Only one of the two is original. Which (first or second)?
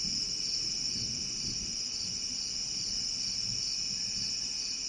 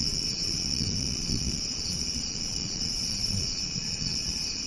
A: first